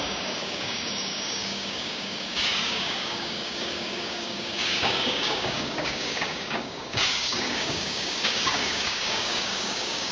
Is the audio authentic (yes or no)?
no